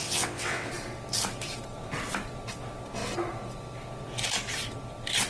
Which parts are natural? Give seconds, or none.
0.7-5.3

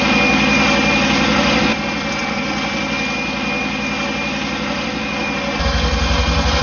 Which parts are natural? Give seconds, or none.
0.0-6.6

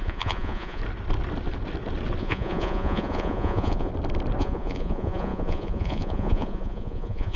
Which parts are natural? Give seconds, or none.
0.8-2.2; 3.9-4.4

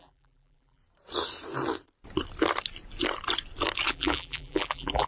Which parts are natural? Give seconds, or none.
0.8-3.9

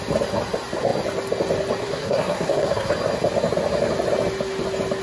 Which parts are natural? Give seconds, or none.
0.0-1.8; 2.9-5.0

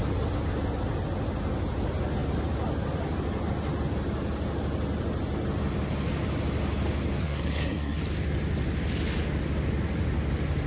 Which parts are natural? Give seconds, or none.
0.0-7.2; 8.0-10.7

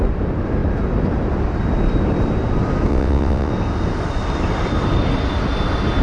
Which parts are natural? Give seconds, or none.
0.0-2.9; 3.5-6.0

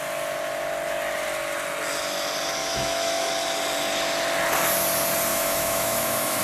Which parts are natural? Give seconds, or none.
0.0-2.6; 3.3-5.3